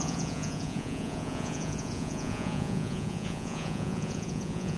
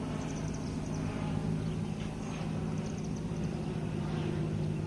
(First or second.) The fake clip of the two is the first